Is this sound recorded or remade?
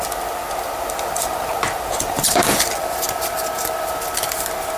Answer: remade